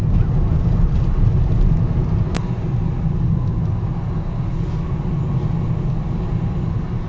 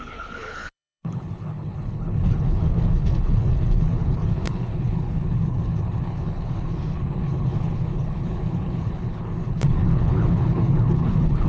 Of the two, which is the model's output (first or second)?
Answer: second